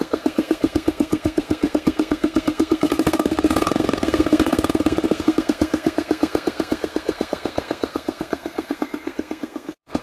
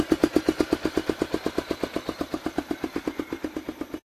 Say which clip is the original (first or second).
second